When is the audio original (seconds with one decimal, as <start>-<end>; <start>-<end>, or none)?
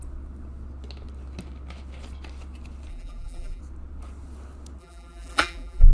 0.0-2.9; 3.6-4.8